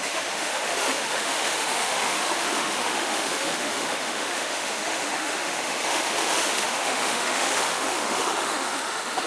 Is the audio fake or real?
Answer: fake